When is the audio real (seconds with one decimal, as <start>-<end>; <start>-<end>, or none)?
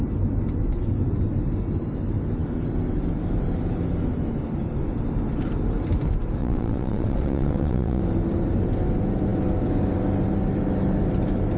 0.0-6.4; 8.0-11.6